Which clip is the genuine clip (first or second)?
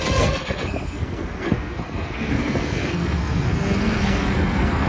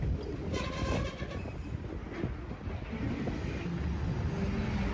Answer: second